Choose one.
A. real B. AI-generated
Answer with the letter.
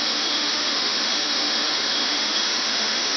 B